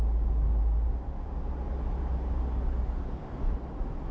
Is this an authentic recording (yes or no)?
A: yes